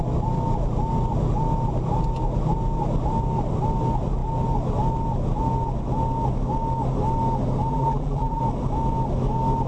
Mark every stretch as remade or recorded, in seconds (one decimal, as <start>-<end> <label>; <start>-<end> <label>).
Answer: 0.0-7.7 recorded; 7.7-8.4 remade; 8.4-9.7 recorded